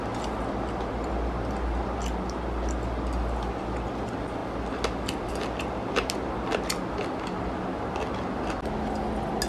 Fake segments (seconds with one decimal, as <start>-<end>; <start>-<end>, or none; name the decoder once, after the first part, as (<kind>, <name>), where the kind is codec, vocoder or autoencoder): none